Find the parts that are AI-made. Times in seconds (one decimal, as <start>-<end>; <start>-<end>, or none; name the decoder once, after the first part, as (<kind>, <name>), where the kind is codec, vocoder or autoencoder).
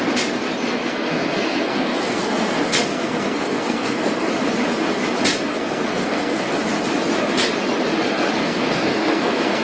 0.8-4.3 (codec, SNAC); 5.5-6.5; 8.4-9.6